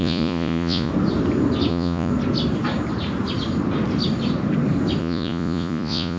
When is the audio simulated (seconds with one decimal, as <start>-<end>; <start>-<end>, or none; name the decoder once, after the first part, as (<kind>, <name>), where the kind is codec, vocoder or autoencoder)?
0.0-0.9 (vocoder, Vocos); 1.7-2.1; 5.0-6.2